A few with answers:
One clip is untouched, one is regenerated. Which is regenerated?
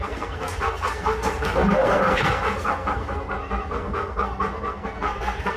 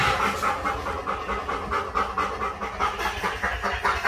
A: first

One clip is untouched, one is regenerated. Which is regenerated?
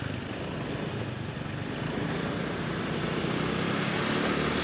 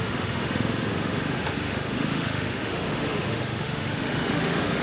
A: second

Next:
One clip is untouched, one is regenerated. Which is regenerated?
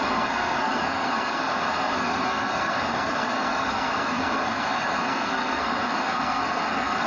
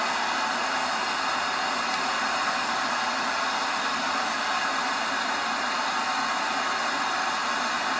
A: first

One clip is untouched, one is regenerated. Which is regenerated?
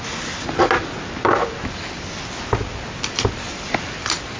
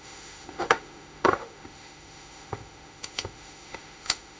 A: second